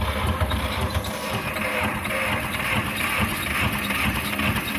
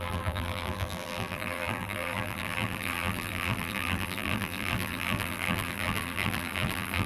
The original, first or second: first